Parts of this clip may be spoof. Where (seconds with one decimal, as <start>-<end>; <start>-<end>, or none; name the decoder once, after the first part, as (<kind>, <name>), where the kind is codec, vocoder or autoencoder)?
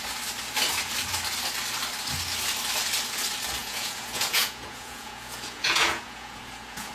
3.6-6.9 (vocoder, Vocos)